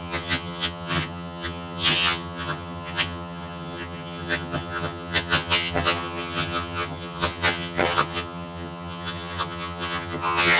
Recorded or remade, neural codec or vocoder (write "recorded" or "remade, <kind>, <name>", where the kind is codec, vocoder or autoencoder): remade, vocoder, HiFi-GAN